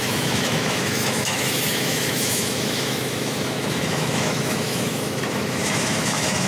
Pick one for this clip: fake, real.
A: fake